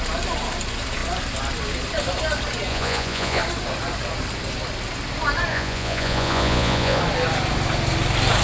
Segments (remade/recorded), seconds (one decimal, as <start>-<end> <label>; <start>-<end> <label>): 0.0-2.7 recorded; 2.7-3.4 remade; 3.4-5.5 recorded; 5.5-7.0 remade; 7.0-8.4 recorded